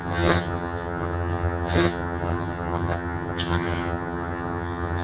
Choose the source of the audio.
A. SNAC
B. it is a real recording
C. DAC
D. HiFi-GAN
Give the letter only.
D